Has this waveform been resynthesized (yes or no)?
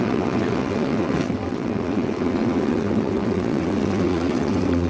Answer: yes